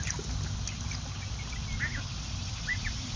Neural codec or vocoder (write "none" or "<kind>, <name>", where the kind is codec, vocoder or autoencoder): none